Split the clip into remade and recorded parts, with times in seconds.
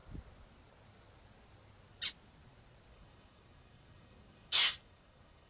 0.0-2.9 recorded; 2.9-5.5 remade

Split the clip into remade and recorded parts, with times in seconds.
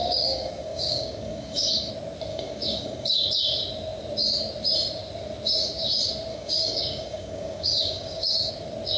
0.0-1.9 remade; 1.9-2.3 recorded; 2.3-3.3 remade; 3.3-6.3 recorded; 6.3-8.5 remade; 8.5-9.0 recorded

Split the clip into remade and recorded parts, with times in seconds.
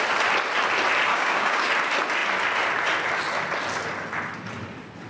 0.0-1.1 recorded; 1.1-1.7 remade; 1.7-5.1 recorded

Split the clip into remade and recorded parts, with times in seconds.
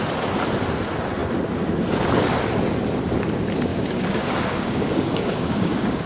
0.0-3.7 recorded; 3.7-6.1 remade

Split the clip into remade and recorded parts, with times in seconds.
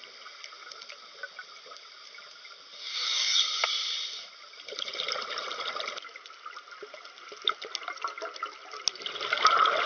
0.0-2.8 recorded; 2.8-3.4 remade; 3.4-9.9 recorded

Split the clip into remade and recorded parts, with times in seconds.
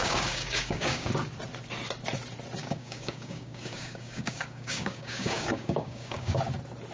0.0-1.1 remade; 1.1-2.6 recorded; 2.6-6.4 remade; 6.4-6.9 recorded